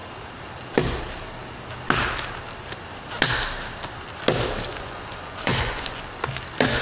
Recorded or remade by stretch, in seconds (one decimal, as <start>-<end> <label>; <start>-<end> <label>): 0.0-4.7 recorded; 4.7-6.0 remade; 6.0-6.8 recorded